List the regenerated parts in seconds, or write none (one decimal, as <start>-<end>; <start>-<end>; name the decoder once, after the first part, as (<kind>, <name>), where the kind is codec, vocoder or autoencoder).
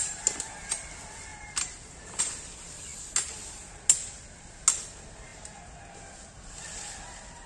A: 1.3-2.2 (vocoder, BigVGAN v2)